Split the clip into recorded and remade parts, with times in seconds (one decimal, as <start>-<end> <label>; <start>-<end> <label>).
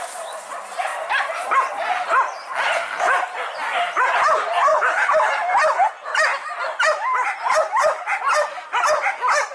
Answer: 0.0-0.9 recorded; 0.9-1.7 remade; 1.7-4.7 recorded; 4.7-5.3 remade; 5.3-6.4 recorded; 6.4-8.8 remade; 8.8-9.5 recorded